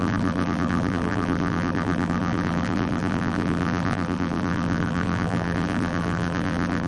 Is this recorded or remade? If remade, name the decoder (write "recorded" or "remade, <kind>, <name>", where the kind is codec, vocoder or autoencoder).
remade, vocoder, BigVGAN v2